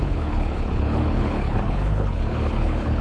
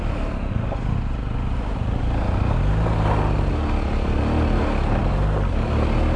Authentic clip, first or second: second